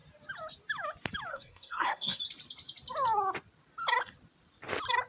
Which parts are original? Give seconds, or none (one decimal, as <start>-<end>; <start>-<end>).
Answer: 0.0-1.3; 2.2-5.1